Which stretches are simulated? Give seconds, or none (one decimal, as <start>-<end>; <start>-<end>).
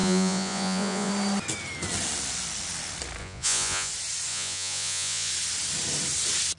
0.0-1.1; 3.2-3.9; 4.3-5.3